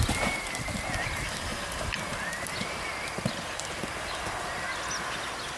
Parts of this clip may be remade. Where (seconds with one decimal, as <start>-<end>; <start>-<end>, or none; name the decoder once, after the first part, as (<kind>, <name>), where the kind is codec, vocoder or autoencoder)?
none